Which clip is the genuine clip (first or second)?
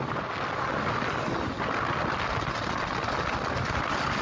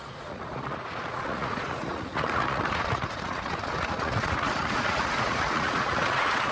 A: first